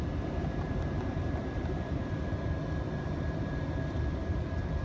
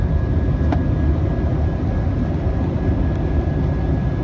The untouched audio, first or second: second